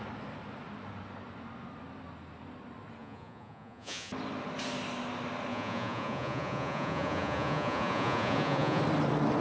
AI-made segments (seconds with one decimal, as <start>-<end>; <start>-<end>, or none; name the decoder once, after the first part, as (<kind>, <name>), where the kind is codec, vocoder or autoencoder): 3.0-4.1 (vocoder, Vocos); 5.5-8.8